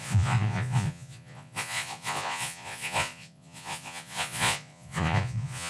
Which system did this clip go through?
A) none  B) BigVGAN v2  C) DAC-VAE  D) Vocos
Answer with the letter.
D